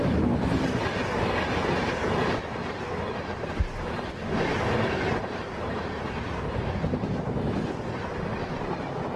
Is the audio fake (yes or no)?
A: no